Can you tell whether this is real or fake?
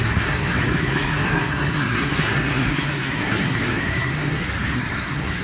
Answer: fake